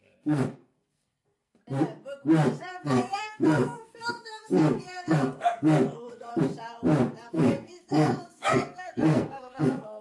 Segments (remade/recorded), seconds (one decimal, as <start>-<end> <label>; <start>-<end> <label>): 0.0-1.6 remade; 1.6-2.6 recorded; 2.6-6.3 remade; 6.3-7.3 recorded; 7.3-10.0 remade